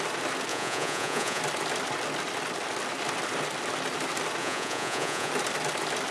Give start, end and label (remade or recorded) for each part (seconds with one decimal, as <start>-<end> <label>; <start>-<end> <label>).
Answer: 0.0-0.5 recorded; 0.5-1.4 remade; 1.4-4.4 recorded; 4.4-5.3 remade; 5.3-6.1 recorded